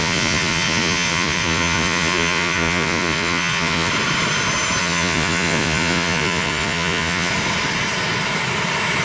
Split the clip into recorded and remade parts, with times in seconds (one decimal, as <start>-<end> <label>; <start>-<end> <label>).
0.0-3.9 remade; 3.9-4.8 recorded; 4.8-7.3 remade; 7.3-9.0 recorded